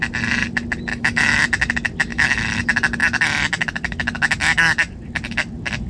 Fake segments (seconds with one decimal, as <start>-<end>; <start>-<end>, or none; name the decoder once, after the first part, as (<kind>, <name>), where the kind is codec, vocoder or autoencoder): 0.9-1.4 (autoencoder, DAC-VAE); 2.1-2.6